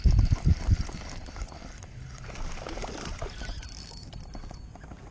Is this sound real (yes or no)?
yes